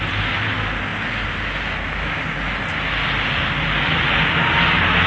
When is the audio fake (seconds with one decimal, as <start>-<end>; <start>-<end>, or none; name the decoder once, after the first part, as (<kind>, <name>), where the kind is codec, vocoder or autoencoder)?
none